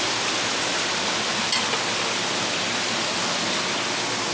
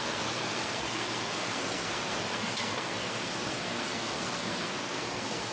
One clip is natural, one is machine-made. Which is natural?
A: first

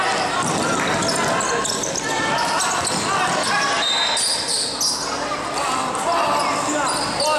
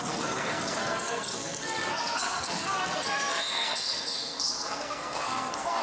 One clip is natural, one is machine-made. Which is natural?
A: first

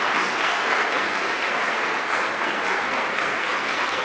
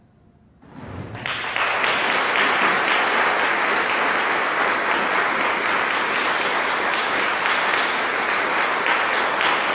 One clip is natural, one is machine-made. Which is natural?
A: second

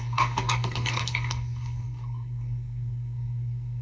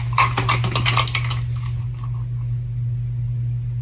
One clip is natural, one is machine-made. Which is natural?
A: second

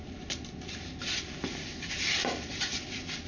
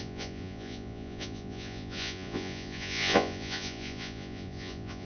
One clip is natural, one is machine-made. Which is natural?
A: first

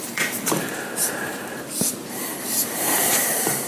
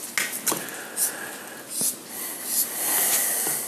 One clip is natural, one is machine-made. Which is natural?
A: second